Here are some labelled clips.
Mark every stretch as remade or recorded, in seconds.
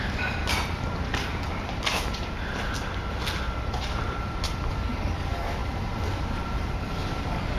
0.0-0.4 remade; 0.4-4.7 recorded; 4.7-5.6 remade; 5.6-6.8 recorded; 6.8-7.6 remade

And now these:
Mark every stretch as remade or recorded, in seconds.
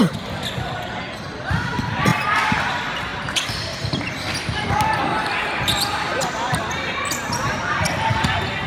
0.0-8.7 recorded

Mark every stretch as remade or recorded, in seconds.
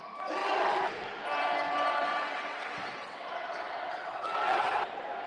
0.0-2.1 recorded; 2.1-4.8 remade; 4.8-5.3 recorded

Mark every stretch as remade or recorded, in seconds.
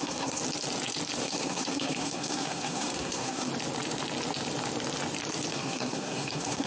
0.0-0.4 remade; 0.4-1.2 recorded; 1.2-3.5 remade; 3.5-5.5 recorded; 5.5-6.7 remade